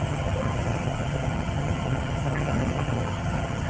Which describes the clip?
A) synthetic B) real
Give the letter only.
A